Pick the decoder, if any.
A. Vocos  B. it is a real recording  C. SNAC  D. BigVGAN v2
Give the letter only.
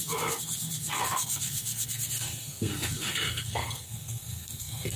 C